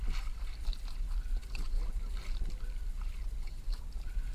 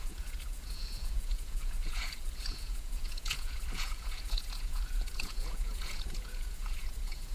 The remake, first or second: second